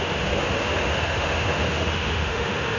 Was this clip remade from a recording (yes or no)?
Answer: yes